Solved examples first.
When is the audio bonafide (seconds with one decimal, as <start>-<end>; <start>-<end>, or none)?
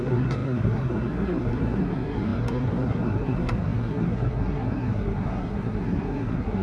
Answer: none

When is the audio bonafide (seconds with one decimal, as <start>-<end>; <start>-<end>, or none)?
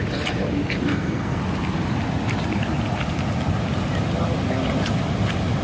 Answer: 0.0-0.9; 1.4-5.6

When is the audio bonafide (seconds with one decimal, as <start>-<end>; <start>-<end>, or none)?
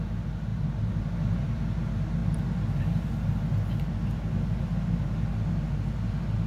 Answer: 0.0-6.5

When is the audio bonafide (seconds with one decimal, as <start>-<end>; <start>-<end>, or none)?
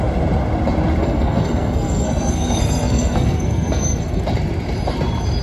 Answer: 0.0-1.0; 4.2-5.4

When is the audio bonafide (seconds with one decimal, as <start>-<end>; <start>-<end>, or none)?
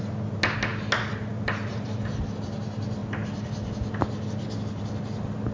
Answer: 0.0-5.5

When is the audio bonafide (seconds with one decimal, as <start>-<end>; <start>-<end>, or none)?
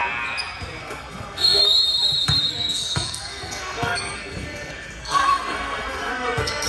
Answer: 0.0-0.8; 1.8-2.5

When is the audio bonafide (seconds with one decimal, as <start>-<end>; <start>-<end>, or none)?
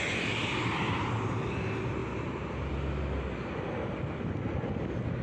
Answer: 0.0-5.2